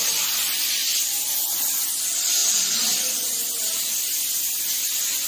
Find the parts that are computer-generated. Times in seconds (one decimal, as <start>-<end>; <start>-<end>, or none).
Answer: none